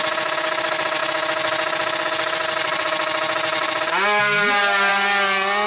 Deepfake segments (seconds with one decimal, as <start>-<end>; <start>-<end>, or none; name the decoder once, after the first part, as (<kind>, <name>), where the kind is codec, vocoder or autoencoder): none